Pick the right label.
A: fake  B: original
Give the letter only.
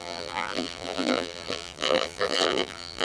A